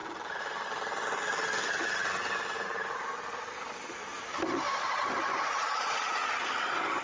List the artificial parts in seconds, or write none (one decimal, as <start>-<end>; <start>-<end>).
5.6-6.3